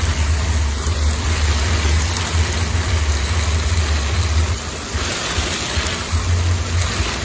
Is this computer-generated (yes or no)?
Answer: no